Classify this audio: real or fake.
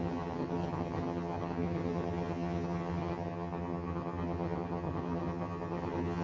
fake